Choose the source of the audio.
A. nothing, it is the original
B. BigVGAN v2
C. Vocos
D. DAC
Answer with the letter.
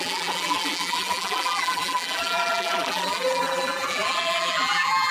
B